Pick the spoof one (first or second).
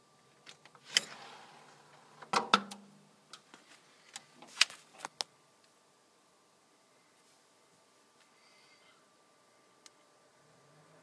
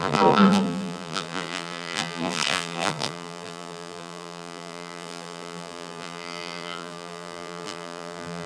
second